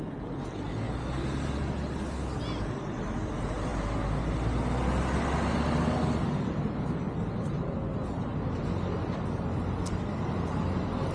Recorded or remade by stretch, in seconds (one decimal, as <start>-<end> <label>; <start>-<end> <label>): 0.0-11.1 recorded